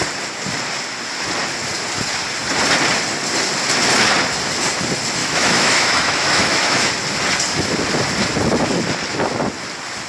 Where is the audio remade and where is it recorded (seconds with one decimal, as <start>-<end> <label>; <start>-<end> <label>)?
0.0-5.2 recorded; 5.2-6.9 remade; 6.9-10.1 recorded